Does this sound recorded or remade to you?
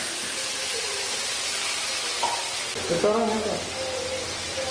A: recorded